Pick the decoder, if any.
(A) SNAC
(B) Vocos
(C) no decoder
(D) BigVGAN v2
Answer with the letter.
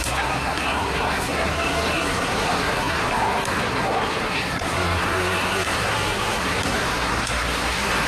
A